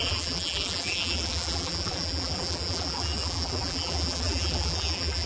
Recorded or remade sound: remade